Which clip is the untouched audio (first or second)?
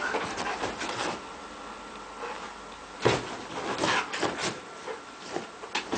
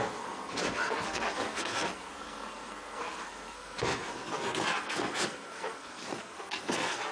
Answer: first